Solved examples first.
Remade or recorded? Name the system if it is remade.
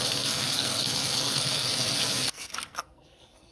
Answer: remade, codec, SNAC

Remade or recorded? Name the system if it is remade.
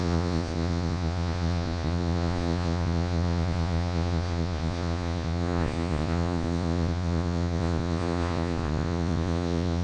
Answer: remade, vocoder, Vocos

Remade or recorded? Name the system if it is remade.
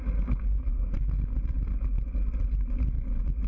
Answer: recorded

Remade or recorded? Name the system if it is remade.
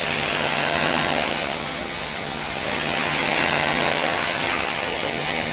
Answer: remade, vocoder, HiFi-GAN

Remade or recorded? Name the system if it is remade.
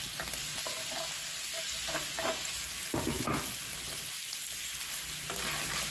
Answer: recorded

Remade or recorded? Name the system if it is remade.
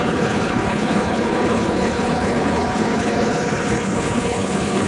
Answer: remade, codec, HILCodec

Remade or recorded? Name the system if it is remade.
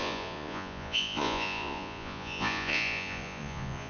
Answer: remade, vocoder, Vocos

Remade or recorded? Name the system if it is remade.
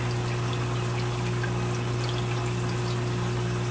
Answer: recorded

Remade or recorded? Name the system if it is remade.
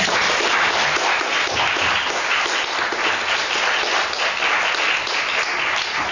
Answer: recorded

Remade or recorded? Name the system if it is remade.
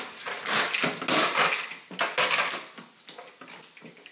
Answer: recorded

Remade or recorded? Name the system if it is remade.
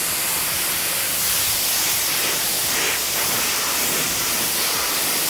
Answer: remade, vocoder, BigVGAN v2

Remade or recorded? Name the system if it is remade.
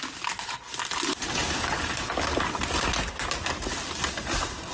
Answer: recorded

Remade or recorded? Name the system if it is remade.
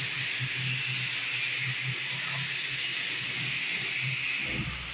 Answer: recorded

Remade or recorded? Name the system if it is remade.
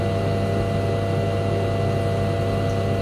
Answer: recorded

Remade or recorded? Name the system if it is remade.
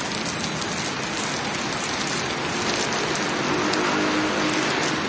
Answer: recorded